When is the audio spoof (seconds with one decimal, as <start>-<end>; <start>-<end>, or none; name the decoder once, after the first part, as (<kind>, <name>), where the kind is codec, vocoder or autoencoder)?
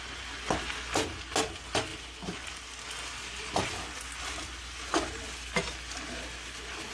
none